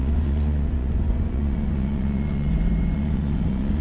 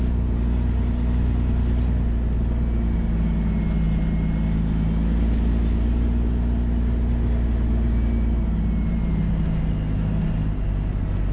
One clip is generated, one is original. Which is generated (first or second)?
first